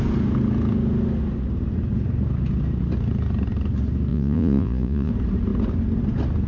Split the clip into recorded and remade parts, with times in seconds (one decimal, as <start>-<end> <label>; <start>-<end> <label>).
0.0-4.1 recorded; 4.1-5.1 remade; 5.1-6.5 recorded